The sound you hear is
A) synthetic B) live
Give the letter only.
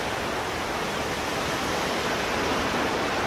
B